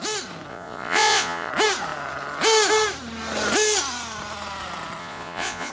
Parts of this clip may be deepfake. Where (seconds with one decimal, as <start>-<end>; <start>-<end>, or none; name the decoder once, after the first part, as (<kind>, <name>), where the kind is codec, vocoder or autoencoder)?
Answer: 0.5-1.5 (vocoder, Vocos); 5.0-5.7